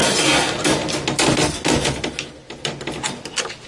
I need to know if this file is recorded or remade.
recorded